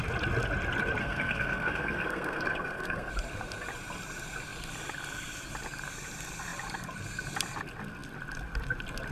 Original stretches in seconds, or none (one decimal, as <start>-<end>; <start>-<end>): 0.0-1.0; 3.1-9.1